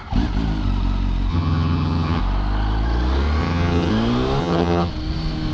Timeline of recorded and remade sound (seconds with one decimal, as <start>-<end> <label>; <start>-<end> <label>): 0.0-1.3 recorded; 1.3-2.2 remade; 2.2-3.4 recorded; 3.4-3.9 remade; 3.9-4.4 recorded; 4.4-4.9 remade; 4.9-5.5 recorded